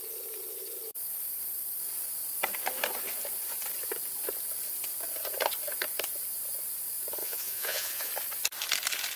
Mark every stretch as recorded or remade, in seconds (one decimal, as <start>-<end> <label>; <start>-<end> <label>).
0.0-7.2 recorded; 7.2-8.1 remade; 8.1-9.2 recorded